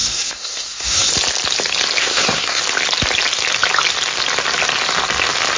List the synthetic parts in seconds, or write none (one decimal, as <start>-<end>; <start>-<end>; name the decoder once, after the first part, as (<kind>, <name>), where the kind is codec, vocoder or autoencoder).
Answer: 0.0-1.1 (codec, SNAC); 2.0-2.6